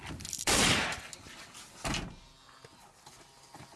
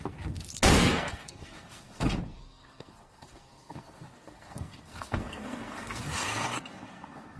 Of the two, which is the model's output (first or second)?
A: second